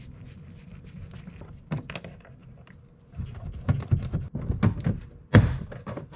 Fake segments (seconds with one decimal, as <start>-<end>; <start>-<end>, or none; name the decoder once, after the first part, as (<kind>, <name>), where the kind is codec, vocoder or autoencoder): 0.0-6.2 (vocoder, BigVGAN v2)

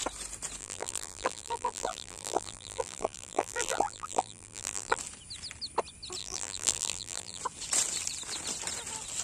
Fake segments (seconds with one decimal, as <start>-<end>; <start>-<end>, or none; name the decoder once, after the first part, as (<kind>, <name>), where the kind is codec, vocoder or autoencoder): 0.6-5.0 (vocoder, BigVGAN v2); 6.2-7.4